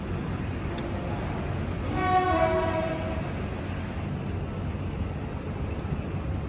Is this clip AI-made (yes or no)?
no